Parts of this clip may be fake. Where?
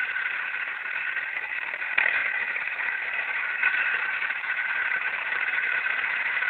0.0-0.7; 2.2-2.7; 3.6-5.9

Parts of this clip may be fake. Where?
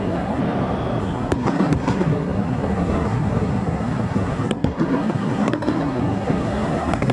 0.0-0.4; 1.0-7.1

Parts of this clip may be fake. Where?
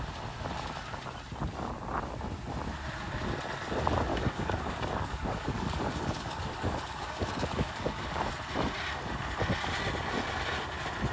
4.1-8.3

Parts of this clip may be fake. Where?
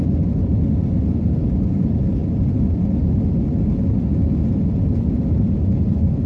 none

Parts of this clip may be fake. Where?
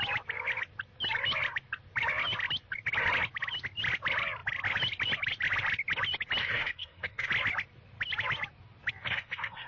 6.4-7.3; 9.0-9.7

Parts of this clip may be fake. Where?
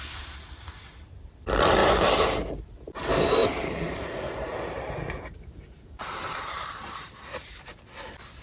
1.8-2.5; 3.4-7.8